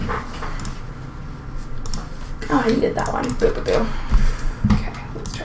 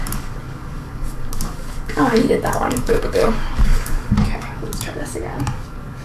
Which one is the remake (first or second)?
second